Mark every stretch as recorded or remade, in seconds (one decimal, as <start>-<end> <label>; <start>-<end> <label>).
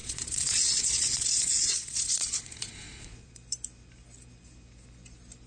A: 0.0-3.3 remade; 3.3-5.5 recorded